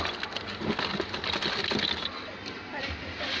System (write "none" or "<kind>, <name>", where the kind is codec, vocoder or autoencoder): none